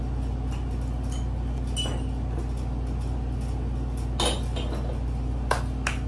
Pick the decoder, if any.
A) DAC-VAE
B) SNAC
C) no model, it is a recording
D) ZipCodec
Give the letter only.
C